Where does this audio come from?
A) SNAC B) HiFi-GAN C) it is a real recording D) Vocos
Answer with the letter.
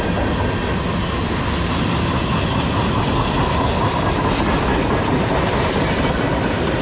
C